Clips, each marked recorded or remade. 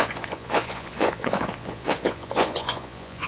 remade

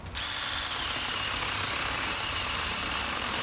recorded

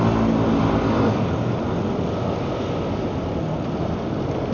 recorded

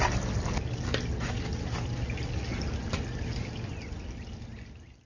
recorded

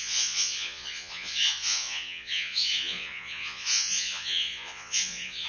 remade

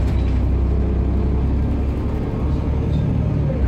recorded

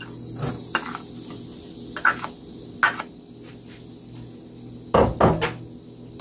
recorded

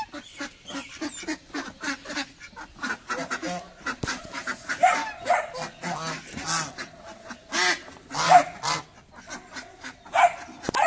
recorded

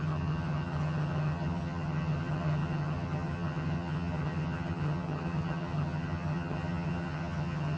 remade